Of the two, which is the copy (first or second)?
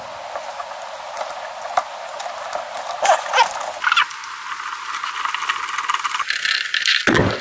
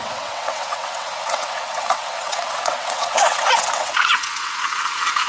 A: second